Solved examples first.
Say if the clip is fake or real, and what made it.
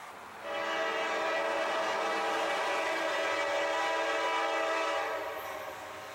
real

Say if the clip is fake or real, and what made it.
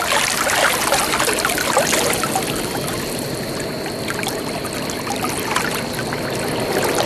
real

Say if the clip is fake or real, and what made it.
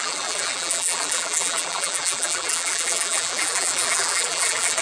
fake, vocoder, BigVGAN v2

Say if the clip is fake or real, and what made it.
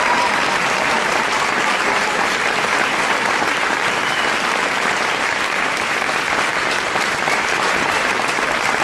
fake, vocoder, BigVGAN v2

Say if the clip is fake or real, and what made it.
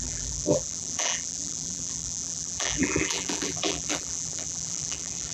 fake, vocoder, BigVGAN v2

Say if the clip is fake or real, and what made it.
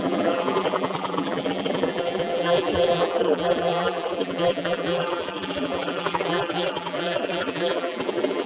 fake, vocoder, BigVGAN v2